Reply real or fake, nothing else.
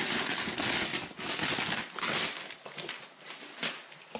real